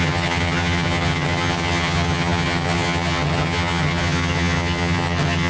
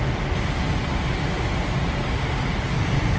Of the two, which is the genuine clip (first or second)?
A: second